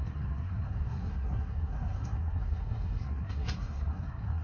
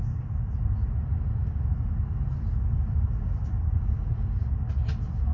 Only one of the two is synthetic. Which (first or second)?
first